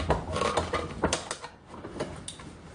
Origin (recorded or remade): recorded